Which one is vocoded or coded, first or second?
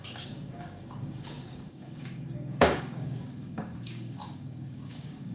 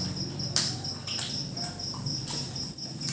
first